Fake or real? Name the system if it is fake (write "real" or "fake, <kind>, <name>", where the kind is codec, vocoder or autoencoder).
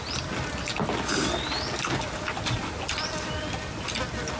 real